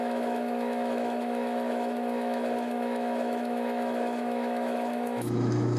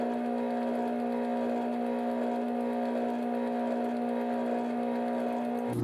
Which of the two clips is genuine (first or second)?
second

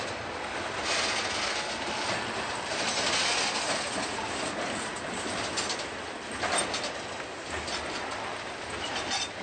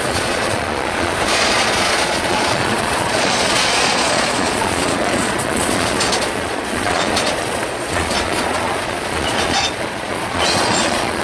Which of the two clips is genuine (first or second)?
first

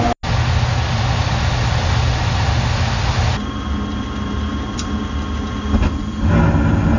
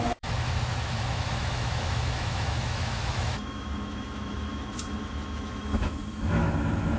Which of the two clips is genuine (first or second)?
first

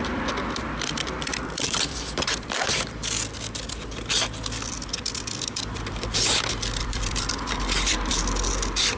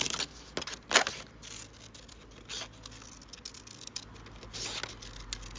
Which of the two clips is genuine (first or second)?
second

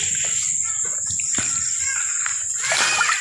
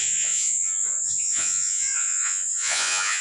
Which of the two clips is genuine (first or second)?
first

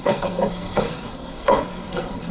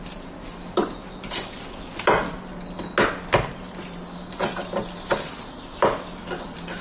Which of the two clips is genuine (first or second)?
second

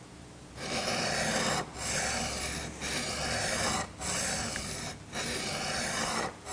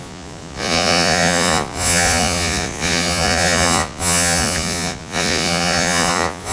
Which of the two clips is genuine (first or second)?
first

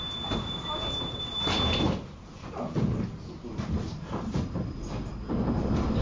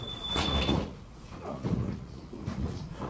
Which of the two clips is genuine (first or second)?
first